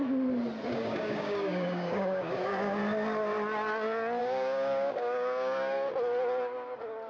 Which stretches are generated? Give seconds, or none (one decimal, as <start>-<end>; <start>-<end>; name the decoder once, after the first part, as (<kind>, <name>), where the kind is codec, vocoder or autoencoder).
0.7-2.8 (codec, DAC); 4.2-5.9